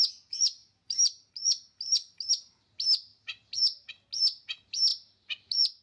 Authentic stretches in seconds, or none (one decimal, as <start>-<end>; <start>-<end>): 0.0-0.6; 1.3-4.9